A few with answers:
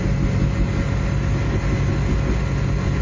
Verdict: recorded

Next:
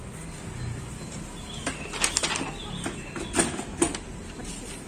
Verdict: recorded